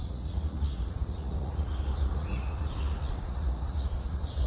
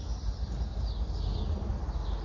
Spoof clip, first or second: first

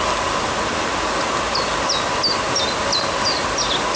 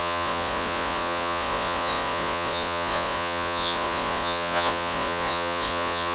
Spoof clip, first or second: second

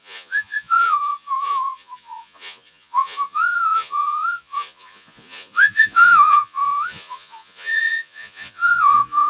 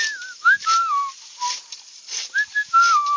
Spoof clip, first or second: first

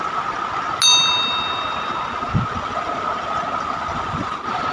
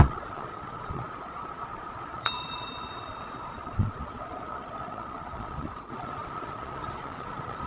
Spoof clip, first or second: second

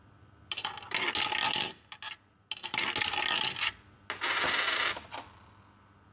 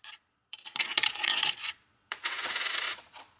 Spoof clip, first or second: second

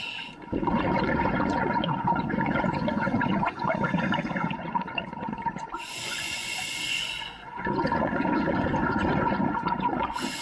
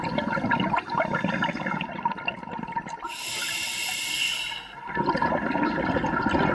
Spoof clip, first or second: first